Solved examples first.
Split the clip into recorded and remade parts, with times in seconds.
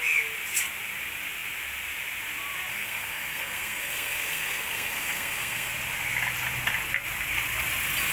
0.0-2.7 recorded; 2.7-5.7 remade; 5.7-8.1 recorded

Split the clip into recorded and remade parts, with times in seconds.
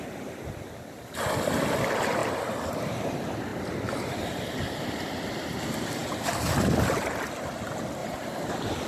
0.0-8.0 recorded; 8.0-8.5 remade; 8.5-8.9 recorded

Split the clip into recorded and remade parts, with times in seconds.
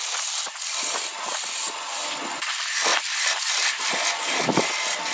0.0-5.1 recorded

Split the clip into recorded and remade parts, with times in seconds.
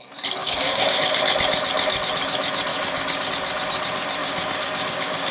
0.0-0.4 recorded; 0.4-1.2 remade; 1.2-2.7 recorded; 2.7-3.3 remade; 3.3-4.2 recorded; 4.2-5.3 remade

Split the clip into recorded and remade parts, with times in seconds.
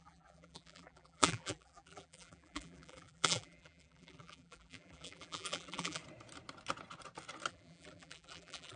0.0-6.0 remade; 6.0-7.5 recorded; 7.5-8.8 remade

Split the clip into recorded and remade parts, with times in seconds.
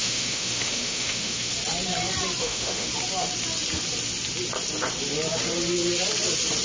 0.0-1.5 remade; 1.5-2.4 recorded; 2.4-2.9 remade; 2.9-6.6 recorded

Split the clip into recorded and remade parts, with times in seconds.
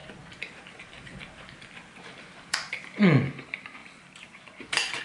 0.0-3.0 remade; 3.0-3.8 recorded; 3.8-5.0 remade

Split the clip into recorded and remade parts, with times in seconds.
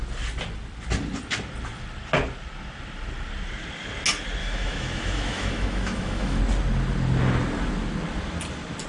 0.0-4.4 recorded; 4.4-6.4 remade; 6.4-8.9 recorded